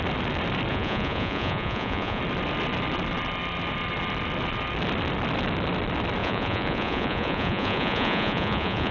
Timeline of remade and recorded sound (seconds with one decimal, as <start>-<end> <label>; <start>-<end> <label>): 0.0-0.7 recorded; 0.7-2.2 remade; 2.2-6.2 recorded; 6.2-8.9 remade